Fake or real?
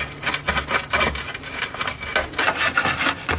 real